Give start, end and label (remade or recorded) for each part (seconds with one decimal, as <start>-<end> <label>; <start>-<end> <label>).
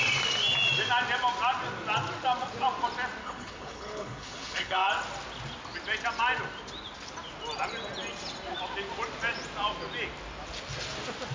0.0-3.2 recorded; 3.2-4.9 remade; 4.9-11.3 recorded